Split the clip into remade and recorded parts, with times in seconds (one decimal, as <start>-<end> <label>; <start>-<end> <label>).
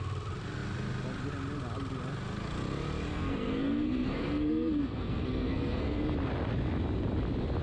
0.0-3.1 recorded; 3.1-6.0 remade; 6.0-7.6 recorded